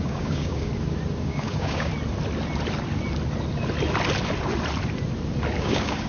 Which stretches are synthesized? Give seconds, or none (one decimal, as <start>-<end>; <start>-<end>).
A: 0.0-0.7; 1.2-1.9; 5.6-6.1